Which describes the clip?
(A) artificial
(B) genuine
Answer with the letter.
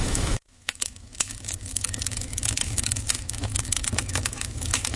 A